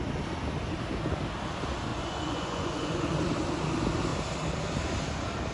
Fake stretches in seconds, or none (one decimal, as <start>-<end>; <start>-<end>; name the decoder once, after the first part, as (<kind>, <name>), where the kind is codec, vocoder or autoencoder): 1.9-3.2 (vocoder, Vocos)